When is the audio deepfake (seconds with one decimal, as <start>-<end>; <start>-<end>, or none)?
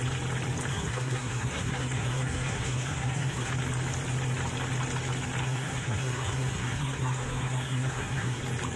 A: 0.7-3.5; 5.4-8.4